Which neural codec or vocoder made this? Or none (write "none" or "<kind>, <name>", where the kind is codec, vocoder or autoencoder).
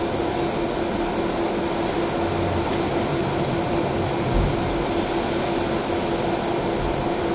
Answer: none